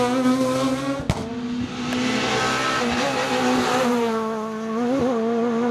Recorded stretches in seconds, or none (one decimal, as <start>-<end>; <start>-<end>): 0.0-5.7